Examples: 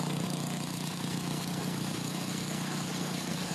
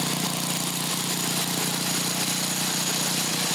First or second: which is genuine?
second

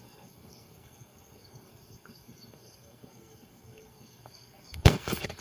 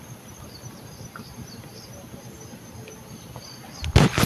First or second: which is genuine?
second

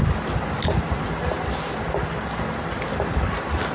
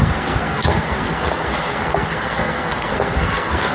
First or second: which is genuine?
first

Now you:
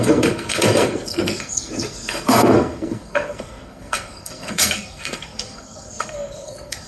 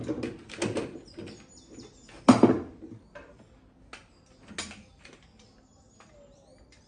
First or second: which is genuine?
second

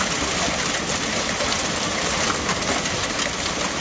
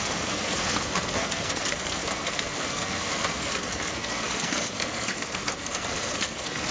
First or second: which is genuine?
first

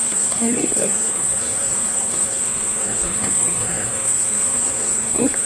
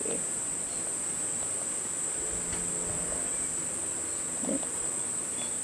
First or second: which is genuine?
second